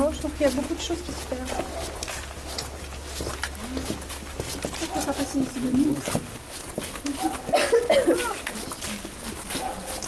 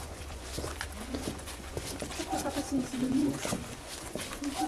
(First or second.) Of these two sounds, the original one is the first